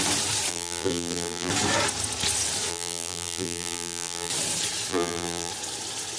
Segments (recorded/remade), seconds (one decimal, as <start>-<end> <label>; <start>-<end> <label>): 0.0-0.5 recorded; 0.5-1.5 remade; 1.5-2.7 recorded; 2.7-4.3 remade; 4.3-4.9 recorded; 4.9-5.5 remade; 5.5-6.2 recorded